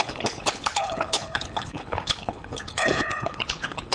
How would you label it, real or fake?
fake